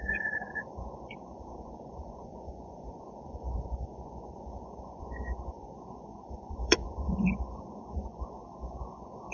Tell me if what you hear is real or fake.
fake